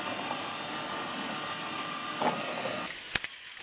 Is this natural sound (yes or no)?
yes